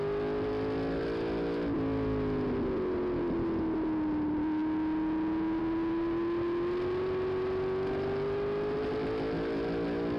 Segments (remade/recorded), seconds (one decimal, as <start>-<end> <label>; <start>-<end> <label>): 0.0-10.2 recorded